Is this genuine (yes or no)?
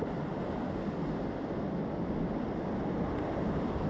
yes